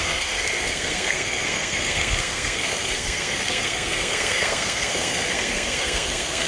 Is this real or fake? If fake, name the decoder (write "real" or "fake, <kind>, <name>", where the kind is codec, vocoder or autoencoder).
fake, codec, SNAC